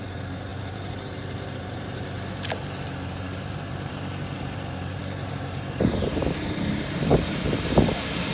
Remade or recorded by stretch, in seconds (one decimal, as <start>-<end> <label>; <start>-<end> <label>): 0.0-7.1 remade; 7.1-8.3 recorded